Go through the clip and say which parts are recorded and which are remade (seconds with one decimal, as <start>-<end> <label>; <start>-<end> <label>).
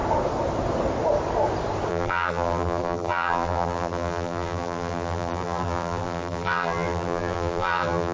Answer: 0.0-1.9 recorded; 1.9-8.1 remade